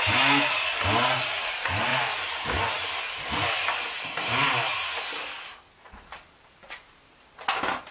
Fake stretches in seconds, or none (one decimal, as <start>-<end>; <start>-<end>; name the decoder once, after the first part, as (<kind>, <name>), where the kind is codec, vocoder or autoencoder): none